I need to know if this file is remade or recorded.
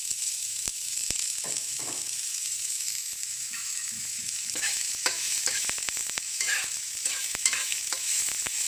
remade